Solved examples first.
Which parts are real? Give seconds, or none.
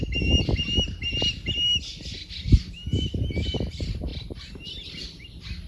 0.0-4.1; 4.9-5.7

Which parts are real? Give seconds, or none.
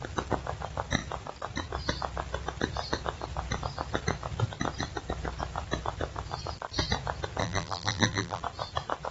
0.0-7.4; 8.4-9.1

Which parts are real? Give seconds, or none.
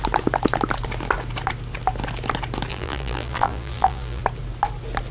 0.0-2.7; 4.2-5.1